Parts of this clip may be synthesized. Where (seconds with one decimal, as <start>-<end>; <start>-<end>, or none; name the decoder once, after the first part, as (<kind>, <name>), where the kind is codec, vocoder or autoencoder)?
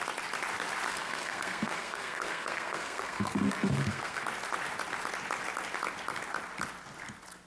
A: 0.9-4.2 (codec, SNAC)